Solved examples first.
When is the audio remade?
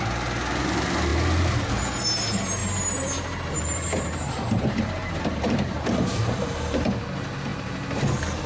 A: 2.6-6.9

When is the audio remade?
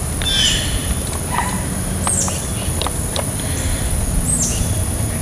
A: 0.8-1.6; 3.1-5.2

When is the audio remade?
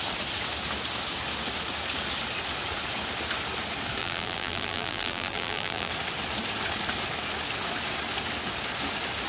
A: 4.0-5.9